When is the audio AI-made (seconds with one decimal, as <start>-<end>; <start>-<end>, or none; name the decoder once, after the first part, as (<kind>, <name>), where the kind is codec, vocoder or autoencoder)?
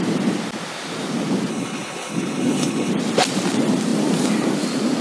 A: 1.5-2.9 (codec, HILCodec)